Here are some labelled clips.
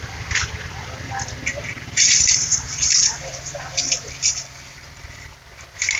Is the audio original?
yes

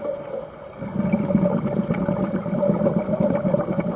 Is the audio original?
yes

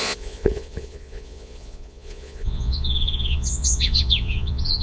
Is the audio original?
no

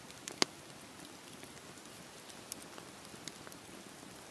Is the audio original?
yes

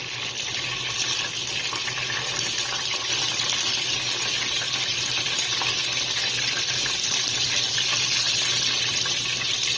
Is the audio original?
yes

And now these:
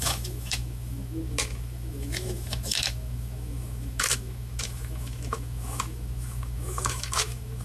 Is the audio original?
no